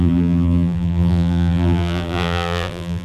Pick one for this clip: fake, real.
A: fake